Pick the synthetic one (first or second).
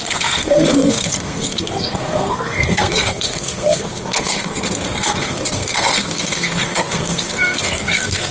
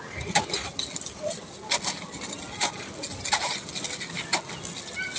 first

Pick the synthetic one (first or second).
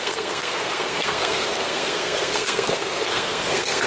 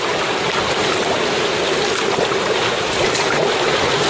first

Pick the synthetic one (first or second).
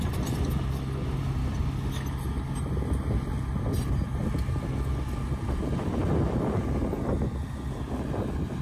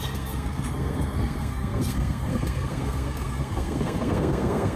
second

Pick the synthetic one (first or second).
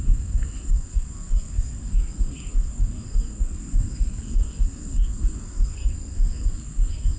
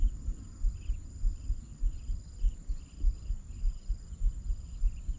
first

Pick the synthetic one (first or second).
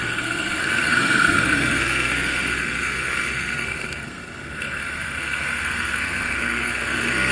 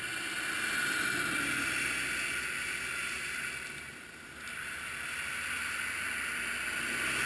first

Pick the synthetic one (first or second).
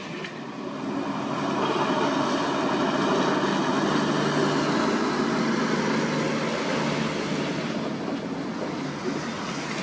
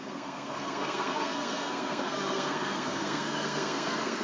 second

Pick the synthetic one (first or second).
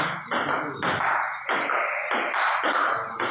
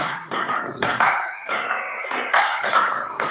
second